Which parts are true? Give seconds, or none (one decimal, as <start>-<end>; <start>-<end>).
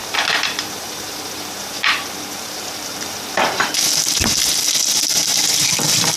3.7-6.2